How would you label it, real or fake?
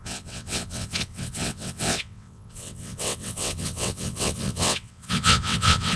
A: fake